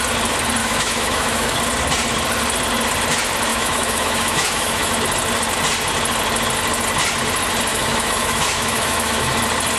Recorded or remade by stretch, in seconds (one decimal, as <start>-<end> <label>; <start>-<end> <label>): 0.0-0.6 recorded; 0.6-1.6 remade; 1.6-3.5 recorded; 3.5-4.9 remade; 4.9-7.7 recorded; 7.7-9.4 remade; 9.4-9.8 recorded

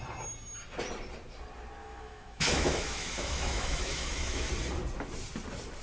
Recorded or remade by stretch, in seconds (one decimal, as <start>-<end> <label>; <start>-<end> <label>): 0.0-1.8 recorded; 1.8-4.5 remade; 4.5-5.8 recorded

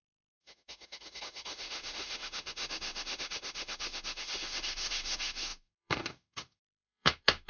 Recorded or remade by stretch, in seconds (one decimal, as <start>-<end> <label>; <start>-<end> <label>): 0.0-7.5 remade

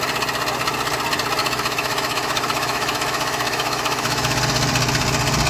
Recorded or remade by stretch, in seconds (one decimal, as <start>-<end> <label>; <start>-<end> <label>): 0.0-1.4 recorded; 1.4-4.4 remade; 4.4-5.5 recorded

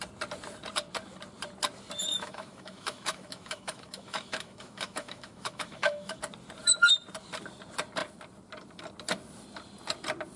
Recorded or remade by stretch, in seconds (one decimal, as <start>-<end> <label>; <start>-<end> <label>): 0.0-2.1 recorded; 2.1-6.2 remade; 6.2-10.4 recorded

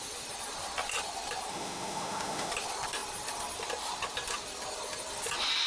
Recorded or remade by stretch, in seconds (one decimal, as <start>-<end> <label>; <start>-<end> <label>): 0.0-1.5 recorded; 1.5-2.5 remade; 2.5-5.7 recorded

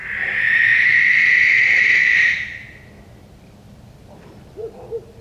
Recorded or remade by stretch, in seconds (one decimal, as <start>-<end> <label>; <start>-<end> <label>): 0.0-5.2 recorded

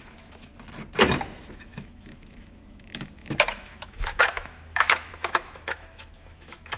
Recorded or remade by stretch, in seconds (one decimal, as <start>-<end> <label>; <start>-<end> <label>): 0.0-0.5 remade; 0.5-1.5 recorded; 1.5-6.8 remade